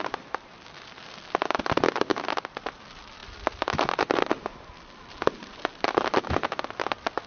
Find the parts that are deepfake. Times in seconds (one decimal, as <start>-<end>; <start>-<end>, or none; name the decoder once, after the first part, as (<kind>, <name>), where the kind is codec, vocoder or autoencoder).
none